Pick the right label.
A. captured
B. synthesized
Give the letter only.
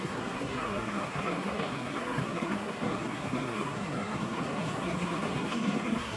B